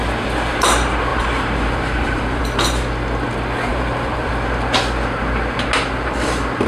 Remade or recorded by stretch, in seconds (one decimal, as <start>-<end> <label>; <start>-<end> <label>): 0.0-1.1 recorded; 1.1-2.4 remade; 2.4-3.7 recorded; 3.7-4.3 remade; 4.3-6.7 recorded